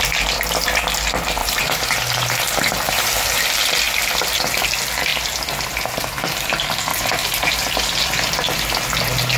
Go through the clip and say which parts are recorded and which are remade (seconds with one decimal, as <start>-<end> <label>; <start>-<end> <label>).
0.0-1.4 recorded; 1.4-3.4 remade; 3.4-9.4 recorded